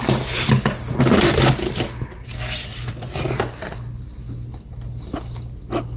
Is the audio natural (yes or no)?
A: yes